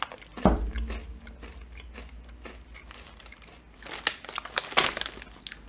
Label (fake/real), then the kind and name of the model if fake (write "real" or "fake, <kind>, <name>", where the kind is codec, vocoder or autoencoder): real